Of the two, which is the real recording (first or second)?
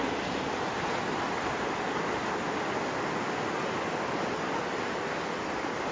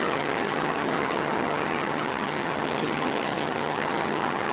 first